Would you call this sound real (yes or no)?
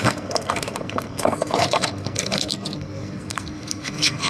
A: no